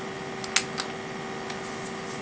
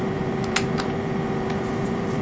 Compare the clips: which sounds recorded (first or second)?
first